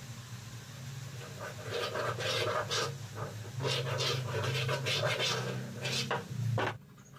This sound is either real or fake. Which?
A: real